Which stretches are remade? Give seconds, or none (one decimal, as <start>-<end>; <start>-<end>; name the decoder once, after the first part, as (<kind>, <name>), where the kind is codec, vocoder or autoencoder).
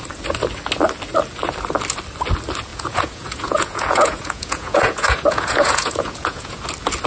2.7-6.6 (vocoder, Vocos)